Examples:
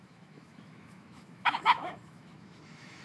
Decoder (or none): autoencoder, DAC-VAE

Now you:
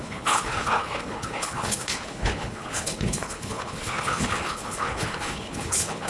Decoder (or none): codec, HILCodec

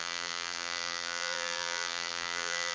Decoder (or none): vocoder, BigVGAN v2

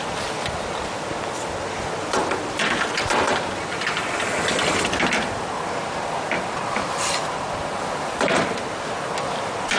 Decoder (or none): none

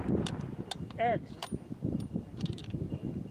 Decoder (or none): none